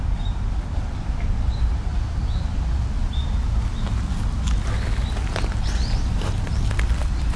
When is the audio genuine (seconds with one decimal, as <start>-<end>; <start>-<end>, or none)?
0.0-7.4